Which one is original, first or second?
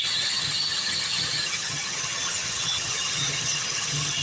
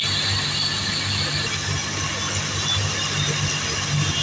second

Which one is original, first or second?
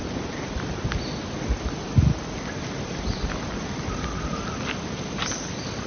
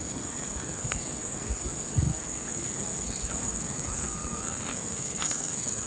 first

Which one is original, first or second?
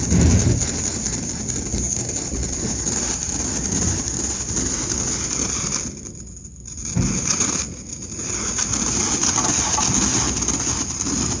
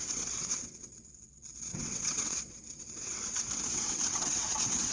first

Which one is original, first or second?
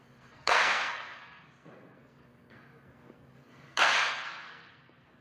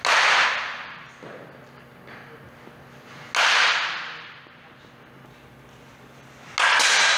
second